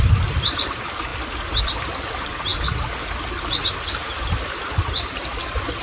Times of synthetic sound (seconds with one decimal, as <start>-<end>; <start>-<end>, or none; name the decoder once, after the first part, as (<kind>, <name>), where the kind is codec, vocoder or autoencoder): none